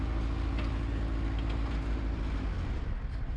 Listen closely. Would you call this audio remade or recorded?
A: recorded